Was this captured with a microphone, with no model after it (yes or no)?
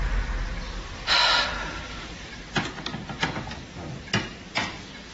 yes